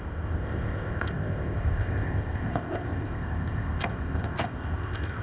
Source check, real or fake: fake